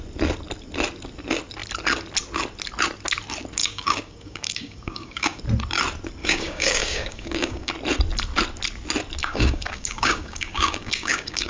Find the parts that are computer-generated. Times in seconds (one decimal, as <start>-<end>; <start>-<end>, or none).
3.6-5.4; 6.2-7.7; 9.2-11.5